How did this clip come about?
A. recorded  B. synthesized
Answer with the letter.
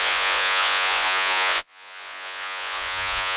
B